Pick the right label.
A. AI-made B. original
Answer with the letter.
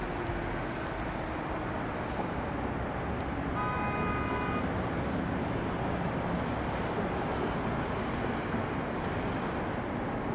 B